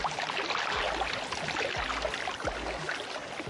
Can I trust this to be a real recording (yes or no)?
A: yes